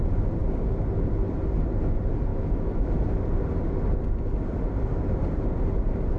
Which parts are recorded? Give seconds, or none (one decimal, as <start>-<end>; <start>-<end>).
0.0-2.3; 2.9-6.2